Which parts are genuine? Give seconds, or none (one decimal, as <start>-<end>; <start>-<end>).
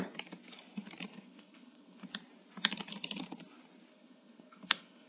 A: 0.0-1.1; 2.0-3.9